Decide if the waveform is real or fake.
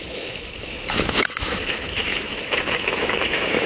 fake